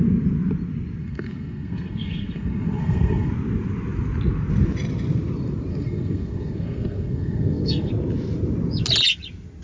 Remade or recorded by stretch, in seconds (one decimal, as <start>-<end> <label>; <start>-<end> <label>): 0.0-1.0 recorded; 1.0-3.3 remade; 3.3-5.7 recorded; 5.7-7.9 remade; 7.9-9.6 recorded